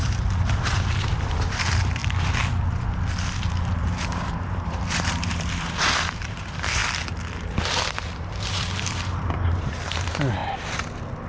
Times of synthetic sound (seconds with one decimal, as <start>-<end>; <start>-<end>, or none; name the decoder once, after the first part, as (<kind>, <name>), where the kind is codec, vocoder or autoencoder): 0.0-2.0 (vocoder, BigVGAN v2); 3.7-6.8; 8.1-10.4